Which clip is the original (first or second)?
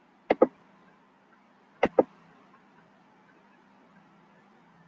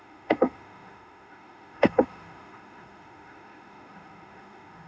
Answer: first